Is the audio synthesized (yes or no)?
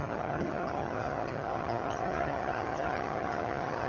yes